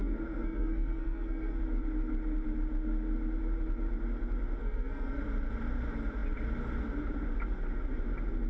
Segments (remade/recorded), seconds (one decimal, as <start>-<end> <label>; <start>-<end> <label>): 0.0-1.6 remade; 1.6-4.6 recorded; 4.6-5.2 remade; 5.2-8.5 recorded